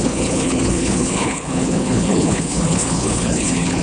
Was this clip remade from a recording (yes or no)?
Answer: yes